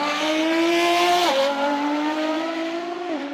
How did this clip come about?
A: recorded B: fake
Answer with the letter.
B